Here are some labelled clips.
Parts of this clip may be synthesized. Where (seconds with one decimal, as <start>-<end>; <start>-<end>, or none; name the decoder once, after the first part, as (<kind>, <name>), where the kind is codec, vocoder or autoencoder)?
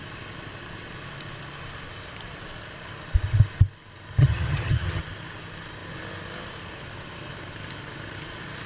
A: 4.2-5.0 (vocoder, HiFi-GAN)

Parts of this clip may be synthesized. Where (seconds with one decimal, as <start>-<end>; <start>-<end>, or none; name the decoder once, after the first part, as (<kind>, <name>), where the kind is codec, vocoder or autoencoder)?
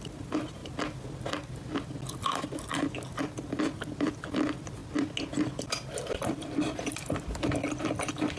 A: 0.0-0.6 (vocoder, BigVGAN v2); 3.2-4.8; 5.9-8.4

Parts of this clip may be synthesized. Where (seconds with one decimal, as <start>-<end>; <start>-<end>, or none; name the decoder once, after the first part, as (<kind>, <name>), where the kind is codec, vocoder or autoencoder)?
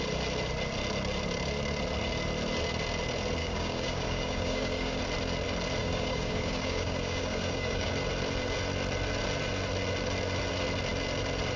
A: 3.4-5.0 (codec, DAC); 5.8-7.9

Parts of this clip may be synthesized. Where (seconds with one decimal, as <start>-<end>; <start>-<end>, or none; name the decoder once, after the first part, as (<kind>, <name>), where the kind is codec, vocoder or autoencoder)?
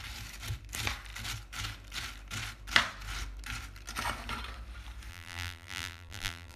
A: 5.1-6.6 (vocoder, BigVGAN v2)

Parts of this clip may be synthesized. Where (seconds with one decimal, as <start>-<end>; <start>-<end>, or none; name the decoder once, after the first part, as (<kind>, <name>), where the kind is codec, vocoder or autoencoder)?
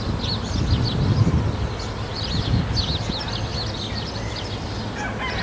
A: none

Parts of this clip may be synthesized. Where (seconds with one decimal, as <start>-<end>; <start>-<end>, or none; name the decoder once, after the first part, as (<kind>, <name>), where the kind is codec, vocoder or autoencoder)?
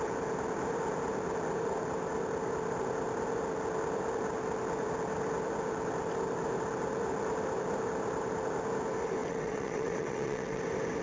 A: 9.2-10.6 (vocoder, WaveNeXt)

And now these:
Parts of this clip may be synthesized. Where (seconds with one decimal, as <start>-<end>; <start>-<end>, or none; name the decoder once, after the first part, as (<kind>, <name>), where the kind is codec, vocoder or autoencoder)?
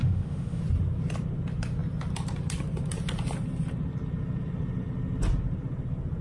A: 0.0-0.6 (autoencoder, DAC-VAE)